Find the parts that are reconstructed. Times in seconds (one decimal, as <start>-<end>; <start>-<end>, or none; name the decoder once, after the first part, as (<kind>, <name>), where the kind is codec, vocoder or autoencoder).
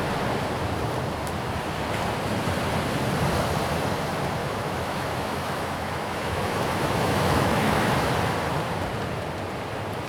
4.4-7.9 (autoencoder, DAC-VAE)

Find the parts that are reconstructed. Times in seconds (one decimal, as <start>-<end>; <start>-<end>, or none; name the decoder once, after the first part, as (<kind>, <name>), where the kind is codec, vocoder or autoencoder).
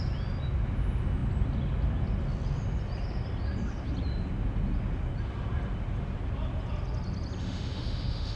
7.4-8.4 (autoencoder, DAC-VAE)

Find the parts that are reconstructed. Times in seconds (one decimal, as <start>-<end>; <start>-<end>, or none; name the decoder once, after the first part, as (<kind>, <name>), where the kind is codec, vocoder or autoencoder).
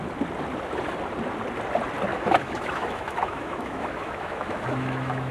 2.1-5.3 (autoencoder, DAC-VAE)